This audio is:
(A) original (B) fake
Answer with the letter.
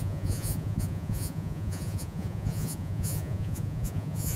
B